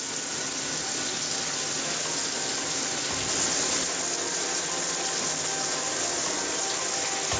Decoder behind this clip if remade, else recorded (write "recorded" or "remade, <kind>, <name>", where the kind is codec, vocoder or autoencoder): recorded